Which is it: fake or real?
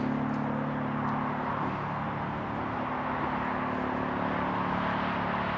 real